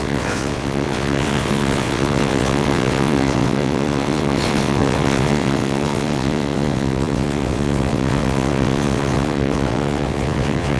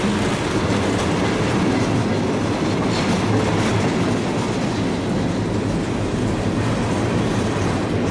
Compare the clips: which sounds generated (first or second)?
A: first